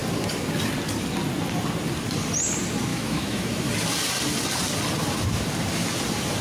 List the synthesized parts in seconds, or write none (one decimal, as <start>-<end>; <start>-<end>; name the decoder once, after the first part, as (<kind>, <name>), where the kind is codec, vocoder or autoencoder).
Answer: 2.9-3.5 (autoencoder, DAC-VAE)